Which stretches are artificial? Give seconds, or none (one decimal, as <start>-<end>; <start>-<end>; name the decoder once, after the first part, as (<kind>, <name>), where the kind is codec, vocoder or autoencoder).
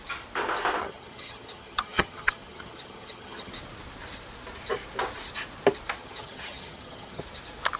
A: 0.8-3.5 (vocoder, HiFi-GAN); 6.0-7.2